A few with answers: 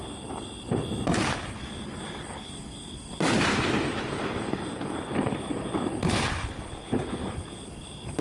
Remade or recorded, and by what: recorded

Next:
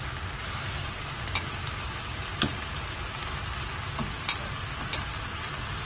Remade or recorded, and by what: recorded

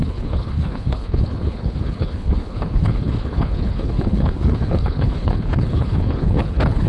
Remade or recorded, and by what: remade, codec, HILCodec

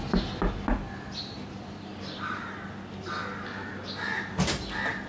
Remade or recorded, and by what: recorded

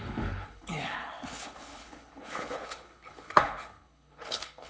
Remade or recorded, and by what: remade, codec, HILCodec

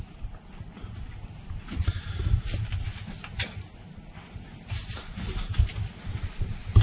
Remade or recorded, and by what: recorded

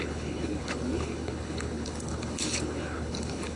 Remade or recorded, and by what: remade, codec, HILCodec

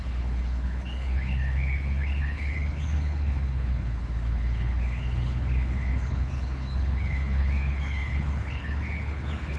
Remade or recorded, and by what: remade, codec, HILCodec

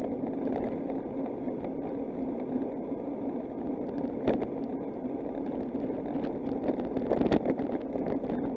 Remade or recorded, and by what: recorded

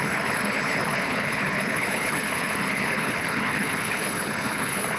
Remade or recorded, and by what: remade, codec, HILCodec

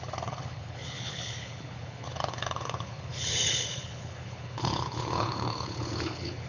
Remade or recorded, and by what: remade, codec, HILCodec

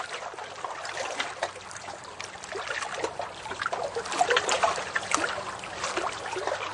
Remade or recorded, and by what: recorded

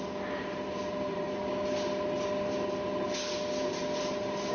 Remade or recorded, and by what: recorded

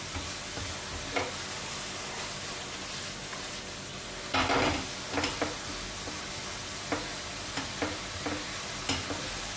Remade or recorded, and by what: recorded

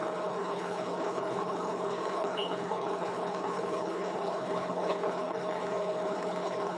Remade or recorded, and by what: remade, codec, HILCodec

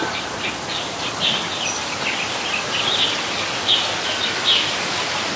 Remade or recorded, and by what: recorded